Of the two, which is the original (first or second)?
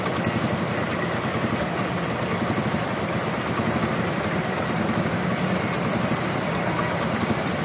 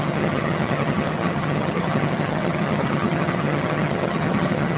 first